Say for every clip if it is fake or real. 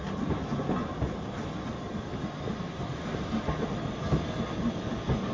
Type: real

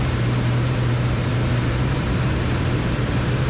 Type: fake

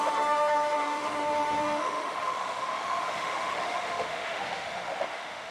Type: fake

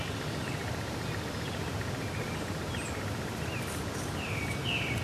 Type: real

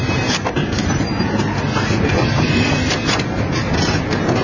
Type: real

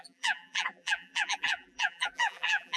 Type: fake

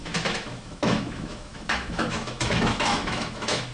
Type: fake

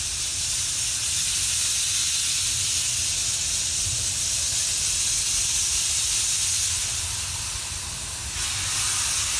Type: real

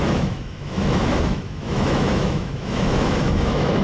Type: fake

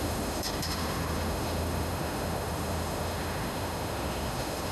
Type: fake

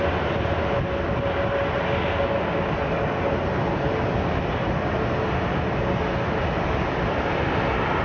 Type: real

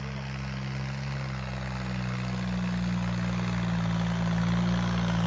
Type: real